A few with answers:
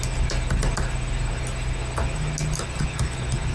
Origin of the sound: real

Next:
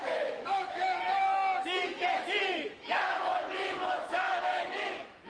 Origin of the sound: fake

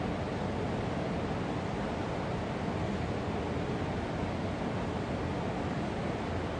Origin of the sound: real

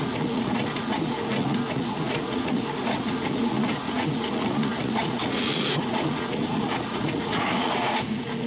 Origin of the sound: fake